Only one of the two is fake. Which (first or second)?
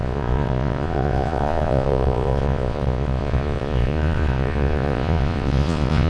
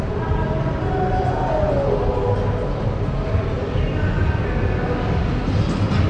first